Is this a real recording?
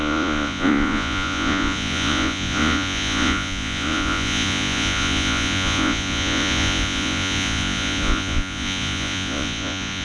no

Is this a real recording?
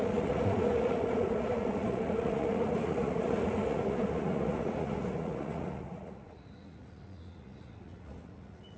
no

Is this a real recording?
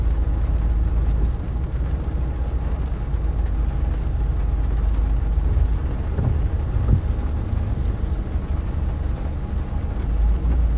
yes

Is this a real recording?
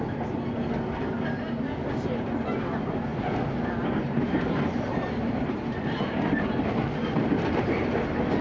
yes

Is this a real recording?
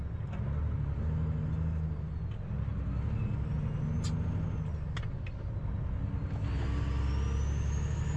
yes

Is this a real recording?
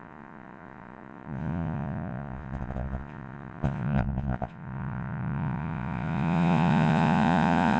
no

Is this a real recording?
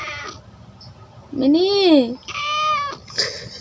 yes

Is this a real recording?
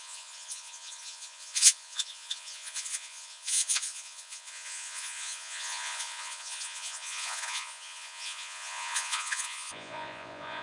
no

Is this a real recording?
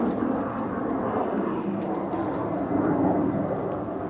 yes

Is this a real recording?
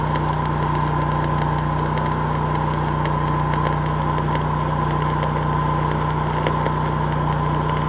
yes